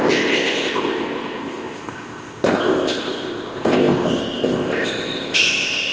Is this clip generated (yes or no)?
yes